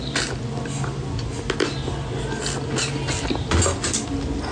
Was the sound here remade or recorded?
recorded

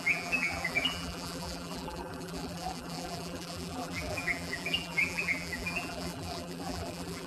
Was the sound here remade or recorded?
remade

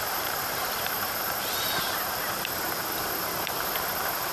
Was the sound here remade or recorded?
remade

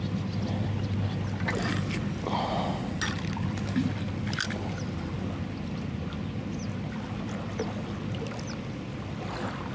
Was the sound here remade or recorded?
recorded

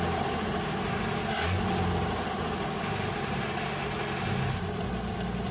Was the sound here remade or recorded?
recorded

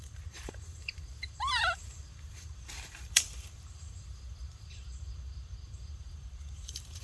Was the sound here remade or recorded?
remade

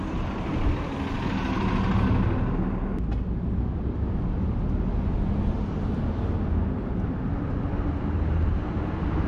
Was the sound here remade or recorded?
recorded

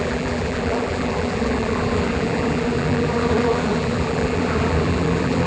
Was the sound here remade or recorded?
remade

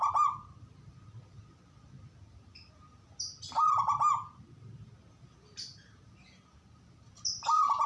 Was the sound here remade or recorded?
recorded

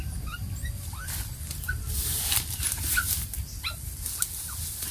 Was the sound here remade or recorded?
recorded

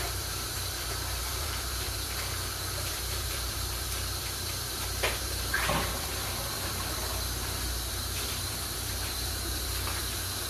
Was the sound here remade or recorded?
remade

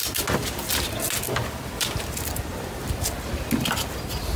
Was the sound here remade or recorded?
recorded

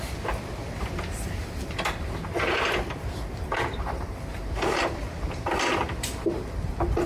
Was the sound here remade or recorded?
remade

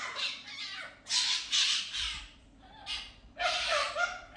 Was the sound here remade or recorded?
remade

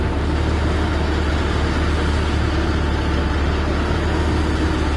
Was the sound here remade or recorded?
recorded